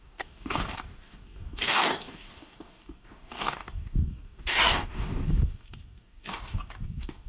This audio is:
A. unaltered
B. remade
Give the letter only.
B